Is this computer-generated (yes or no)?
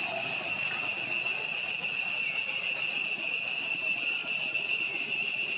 no